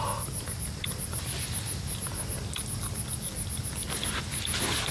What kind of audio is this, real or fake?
real